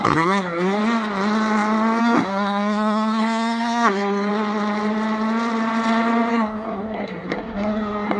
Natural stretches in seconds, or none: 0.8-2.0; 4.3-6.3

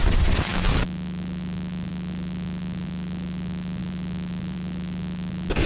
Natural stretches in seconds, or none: 0.0-5.7

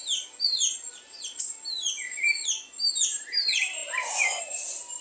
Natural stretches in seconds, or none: 0.0-3.0; 3.8-4.4

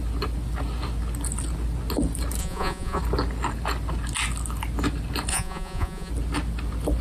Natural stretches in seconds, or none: 0.0-2.4; 3.0-5.3; 6.1-7.0

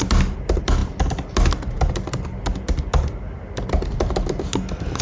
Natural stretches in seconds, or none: 0.0-5.0

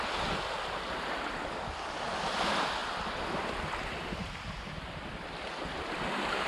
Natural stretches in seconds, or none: 0.0-2.8; 5.5-6.5